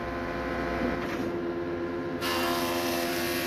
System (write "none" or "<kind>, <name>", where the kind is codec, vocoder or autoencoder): vocoder, BigVGAN v2